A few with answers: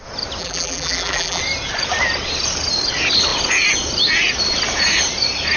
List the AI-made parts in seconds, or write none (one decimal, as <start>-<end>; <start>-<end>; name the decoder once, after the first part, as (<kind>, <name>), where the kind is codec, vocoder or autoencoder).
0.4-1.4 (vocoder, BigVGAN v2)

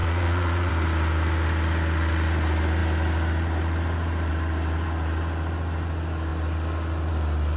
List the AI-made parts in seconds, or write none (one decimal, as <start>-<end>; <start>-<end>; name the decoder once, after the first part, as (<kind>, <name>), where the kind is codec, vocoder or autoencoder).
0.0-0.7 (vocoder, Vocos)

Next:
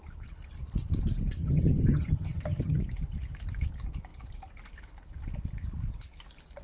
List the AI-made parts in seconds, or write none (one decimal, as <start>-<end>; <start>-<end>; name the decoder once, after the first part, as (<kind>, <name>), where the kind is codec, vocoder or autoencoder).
1.4-2.8 (vocoder, HiFi-GAN)